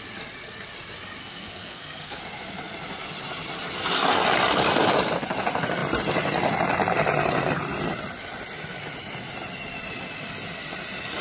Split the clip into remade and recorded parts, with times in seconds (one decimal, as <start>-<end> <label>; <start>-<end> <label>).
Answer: 0.0-1.2 recorded; 1.2-2.2 remade; 2.2-11.2 recorded